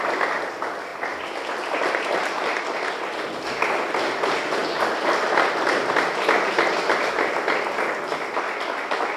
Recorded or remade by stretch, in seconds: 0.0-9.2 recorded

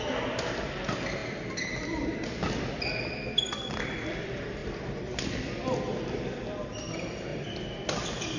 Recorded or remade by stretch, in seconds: 0.0-8.4 recorded

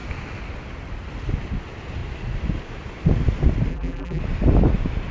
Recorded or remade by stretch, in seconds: 0.0-3.7 recorded; 3.7-4.2 remade; 4.2-5.1 recorded